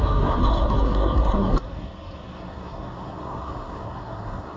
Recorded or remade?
remade